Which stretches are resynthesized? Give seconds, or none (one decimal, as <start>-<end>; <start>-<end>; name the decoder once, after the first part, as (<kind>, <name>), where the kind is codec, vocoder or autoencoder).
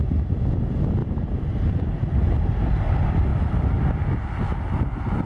1.0-2.6 (vocoder, BigVGAN v2)